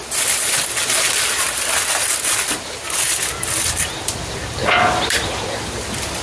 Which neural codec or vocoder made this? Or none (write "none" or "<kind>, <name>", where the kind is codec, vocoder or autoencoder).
none